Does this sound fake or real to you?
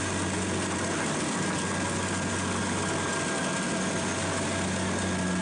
real